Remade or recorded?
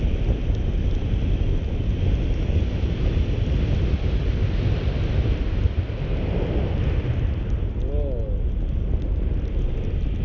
recorded